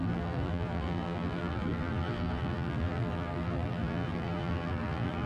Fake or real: fake